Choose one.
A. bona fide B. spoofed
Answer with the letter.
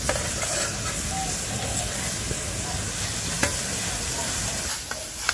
A